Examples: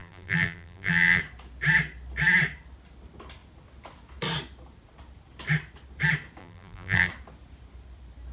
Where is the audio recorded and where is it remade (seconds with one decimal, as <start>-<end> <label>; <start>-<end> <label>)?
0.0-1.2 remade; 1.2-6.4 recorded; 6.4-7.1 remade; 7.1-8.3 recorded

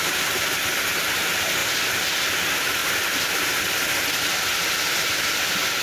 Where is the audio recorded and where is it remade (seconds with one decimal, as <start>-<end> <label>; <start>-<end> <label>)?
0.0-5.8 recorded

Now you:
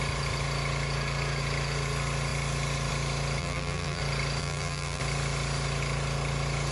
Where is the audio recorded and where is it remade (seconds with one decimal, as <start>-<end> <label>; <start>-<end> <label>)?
0.0-3.4 recorded; 3.4-4.0 remade; 4.0-4.4 recorded; 4.4-5.0 remade; 5.0-6.7 recorded

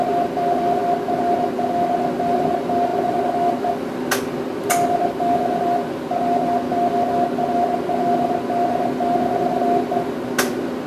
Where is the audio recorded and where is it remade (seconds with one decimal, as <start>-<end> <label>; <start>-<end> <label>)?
0.0-10.9 recorded